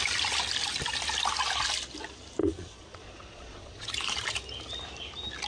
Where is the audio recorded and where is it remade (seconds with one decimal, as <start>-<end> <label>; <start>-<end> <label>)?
0.0-2.4 recorded; 2.4-3.9 remade; 3.9-5.5 recorded